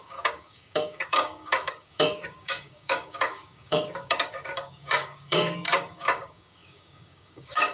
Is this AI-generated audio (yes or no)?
yes